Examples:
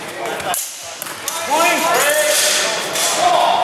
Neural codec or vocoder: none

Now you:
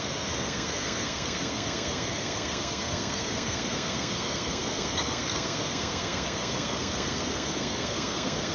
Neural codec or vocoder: codec, SNAC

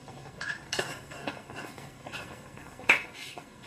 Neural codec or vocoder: codec, SNAC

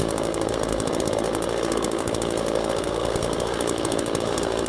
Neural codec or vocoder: codec, SNAC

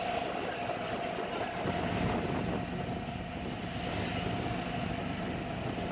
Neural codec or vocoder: none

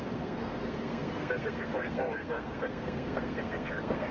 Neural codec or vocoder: codec, SNAC